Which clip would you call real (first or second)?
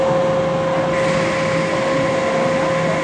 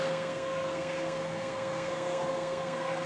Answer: first